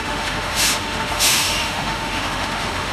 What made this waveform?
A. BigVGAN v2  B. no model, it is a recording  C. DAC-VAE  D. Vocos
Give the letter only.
C